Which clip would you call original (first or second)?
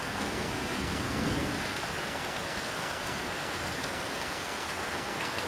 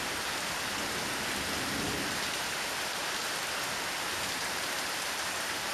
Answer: second